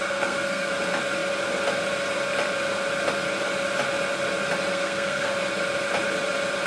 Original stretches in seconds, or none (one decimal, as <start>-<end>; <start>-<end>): 0.7-4.7; 5.3-6.7